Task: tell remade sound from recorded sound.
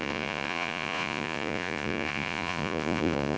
remade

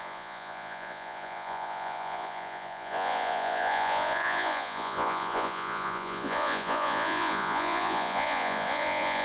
remade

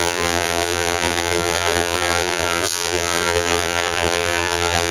remade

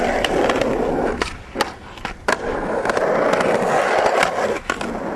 recorded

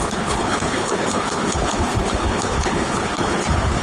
remade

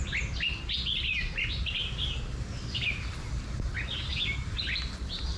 recorded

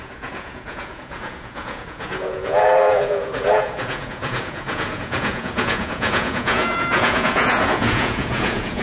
remade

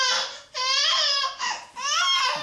recorded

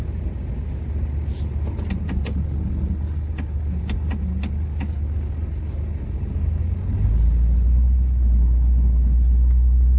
recorded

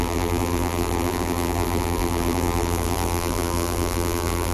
remade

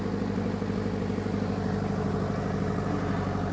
recorded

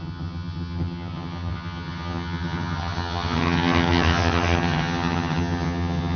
remade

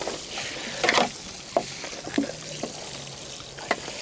recorded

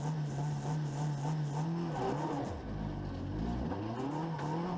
recorded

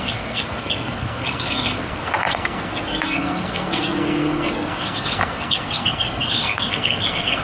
remade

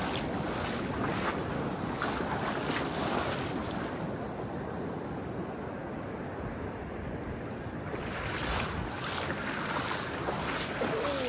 recorded